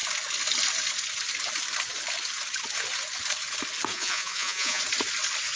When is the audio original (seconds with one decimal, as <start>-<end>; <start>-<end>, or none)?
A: 0.0-3.9; 4.8-5.6